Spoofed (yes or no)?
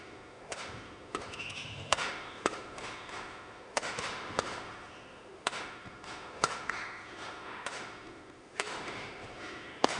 yes